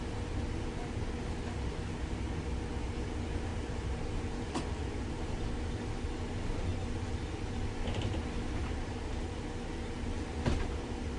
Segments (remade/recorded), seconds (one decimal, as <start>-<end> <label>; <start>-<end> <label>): 0.0-3.5 recorded; 3.5-5.5 remade; 5.5-8.6 recorded; 8.6-9.3 remade; 9.3-11.2 recorded